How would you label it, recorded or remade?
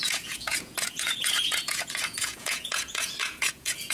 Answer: remade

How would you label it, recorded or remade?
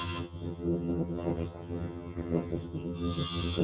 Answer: remade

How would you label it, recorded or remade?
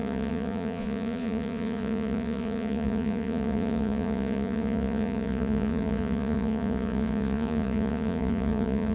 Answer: remade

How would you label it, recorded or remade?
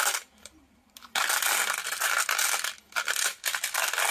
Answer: recorded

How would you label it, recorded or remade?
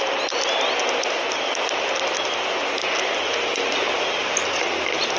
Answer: recorded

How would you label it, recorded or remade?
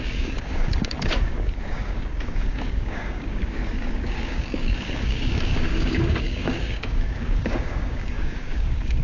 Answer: remade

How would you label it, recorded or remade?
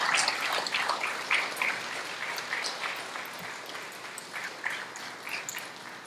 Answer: recorded